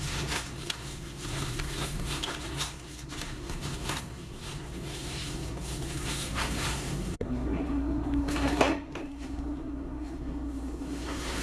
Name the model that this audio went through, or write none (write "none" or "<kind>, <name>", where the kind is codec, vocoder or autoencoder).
codec, SNAC